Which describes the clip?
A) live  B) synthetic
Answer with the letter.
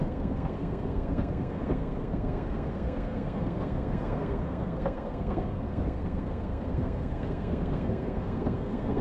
B